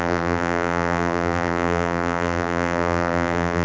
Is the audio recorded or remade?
remade